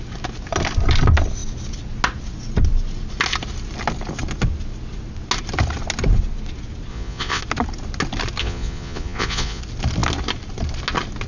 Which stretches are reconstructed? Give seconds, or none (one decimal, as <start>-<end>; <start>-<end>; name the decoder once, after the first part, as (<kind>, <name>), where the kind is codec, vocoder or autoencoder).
6.9-7.4 (vocoder, Vocos); 8.4-9.6